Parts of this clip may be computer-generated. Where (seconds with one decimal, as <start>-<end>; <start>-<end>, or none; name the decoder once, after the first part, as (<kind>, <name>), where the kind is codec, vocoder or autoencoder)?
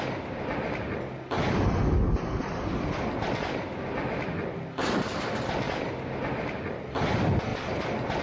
none